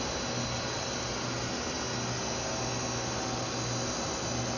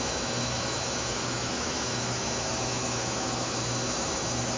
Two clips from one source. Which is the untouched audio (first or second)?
first